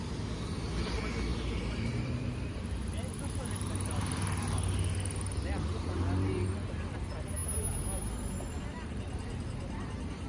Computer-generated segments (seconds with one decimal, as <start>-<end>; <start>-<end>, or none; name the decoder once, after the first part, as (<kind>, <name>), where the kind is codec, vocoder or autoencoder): 1.3-3.7 (vocoder, BigVGAN v2)